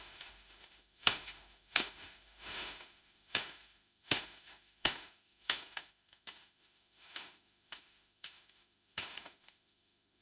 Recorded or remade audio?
remade